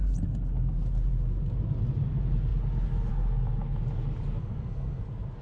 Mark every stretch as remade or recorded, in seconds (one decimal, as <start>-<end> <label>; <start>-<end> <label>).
0.0-4.4 recorded; 4.4-5.0 remade; 5.0-5.4 recorded